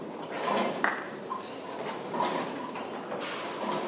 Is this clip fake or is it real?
real